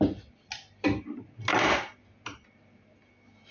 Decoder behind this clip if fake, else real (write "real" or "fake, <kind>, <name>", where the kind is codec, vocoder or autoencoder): real